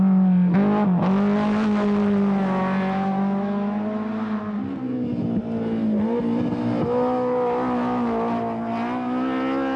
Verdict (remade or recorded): recorded